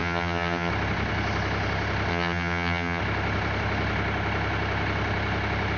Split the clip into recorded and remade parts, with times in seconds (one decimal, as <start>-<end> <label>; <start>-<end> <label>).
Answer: 0.0-0.7 remade; 0.7-2.1 recorded; 2.1-3.0 remade; 3.0-5.8 recorded